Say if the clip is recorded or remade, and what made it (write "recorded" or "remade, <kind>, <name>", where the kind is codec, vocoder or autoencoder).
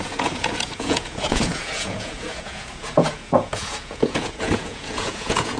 remade, vocoder, Vocos